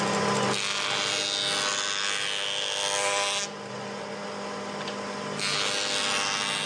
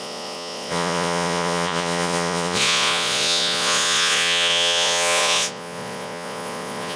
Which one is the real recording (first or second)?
first